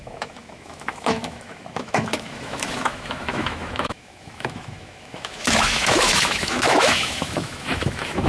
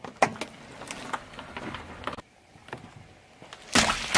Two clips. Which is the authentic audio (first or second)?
second